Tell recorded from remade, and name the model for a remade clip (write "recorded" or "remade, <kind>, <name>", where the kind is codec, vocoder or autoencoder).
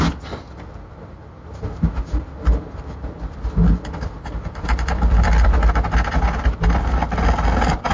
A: recorded